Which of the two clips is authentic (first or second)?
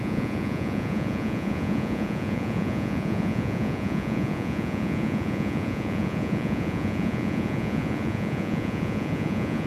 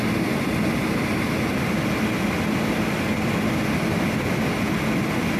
second